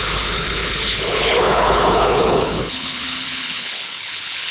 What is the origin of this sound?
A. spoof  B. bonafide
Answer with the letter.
A